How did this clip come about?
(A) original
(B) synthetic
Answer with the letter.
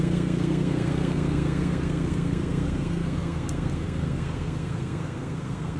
B